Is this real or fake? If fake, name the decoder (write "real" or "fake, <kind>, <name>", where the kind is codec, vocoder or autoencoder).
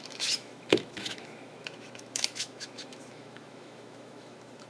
fake, autoencoder, DAC-VAE